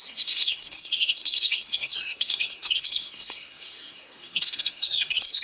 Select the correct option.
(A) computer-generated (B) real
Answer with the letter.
A